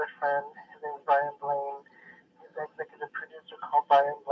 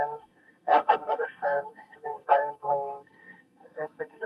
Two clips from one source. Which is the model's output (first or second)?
second